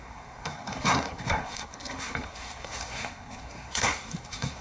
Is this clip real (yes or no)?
no